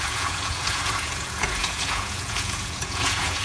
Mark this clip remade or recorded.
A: remade